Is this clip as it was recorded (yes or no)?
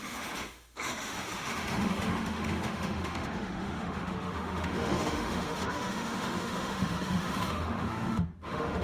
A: no